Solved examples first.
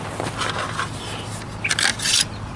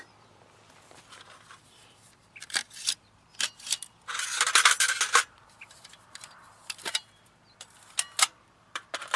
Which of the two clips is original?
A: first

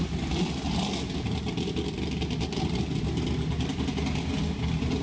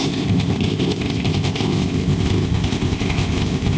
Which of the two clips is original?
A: first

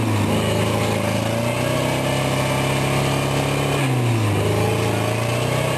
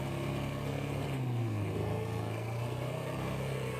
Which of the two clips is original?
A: first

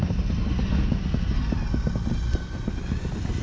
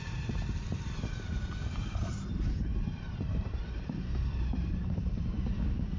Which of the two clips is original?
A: first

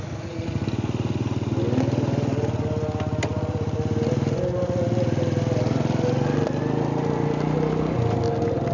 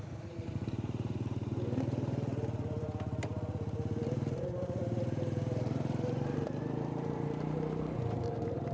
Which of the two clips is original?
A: first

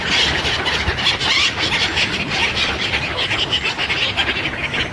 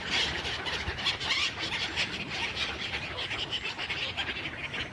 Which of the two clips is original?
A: first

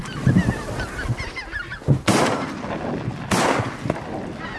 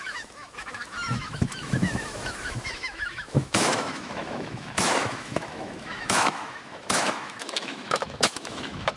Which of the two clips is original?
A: first